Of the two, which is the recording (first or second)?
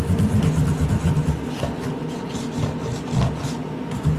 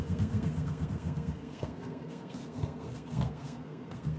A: first